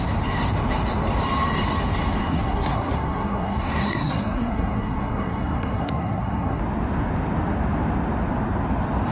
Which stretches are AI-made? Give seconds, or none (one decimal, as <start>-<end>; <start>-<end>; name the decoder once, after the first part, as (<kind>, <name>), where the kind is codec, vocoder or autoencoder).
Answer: 2.2-6.6 (codec, SNAC)